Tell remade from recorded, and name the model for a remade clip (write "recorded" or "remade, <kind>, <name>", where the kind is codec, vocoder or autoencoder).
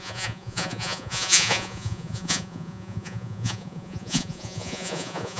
remade, vocoder, Vocos